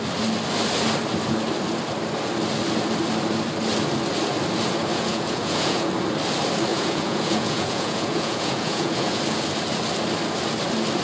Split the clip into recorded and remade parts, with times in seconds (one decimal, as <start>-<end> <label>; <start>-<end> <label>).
0.0-4.9 recorded; 4.9-5.9 remade; 5.9-6.7 recorded; 6.7-9.2 remade; 9.2-11.0 recorded